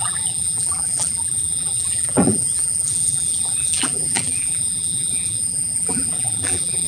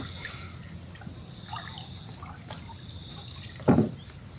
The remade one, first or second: first